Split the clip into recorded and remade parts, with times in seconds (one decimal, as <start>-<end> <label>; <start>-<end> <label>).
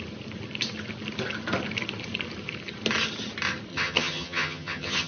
0.0-3.7 recorded; 3.7-5.1 remade